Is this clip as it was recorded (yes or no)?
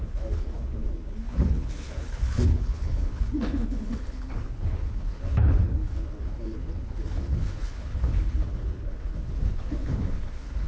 no